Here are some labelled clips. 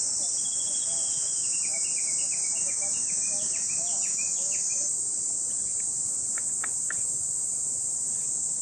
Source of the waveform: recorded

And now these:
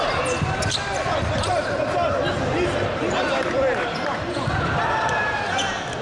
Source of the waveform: remade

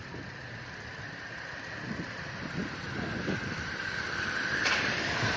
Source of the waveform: remade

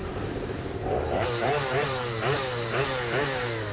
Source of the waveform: remade